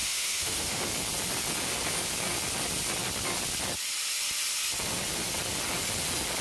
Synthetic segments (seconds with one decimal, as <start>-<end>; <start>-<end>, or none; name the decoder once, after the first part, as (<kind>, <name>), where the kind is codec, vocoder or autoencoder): 0.0-0.8 (autoencoder, DAC-VAE)